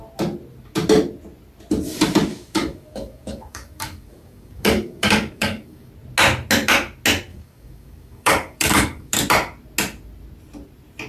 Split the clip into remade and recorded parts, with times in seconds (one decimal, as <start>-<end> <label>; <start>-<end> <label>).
0.0-2.3 recorded; 2.3-5.9 remade; 5.9-7.3 recorded; 7.3-9.2 remade; 9.2-11.1 recorded